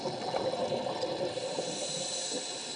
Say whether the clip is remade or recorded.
recorded